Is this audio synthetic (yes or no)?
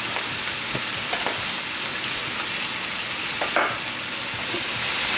no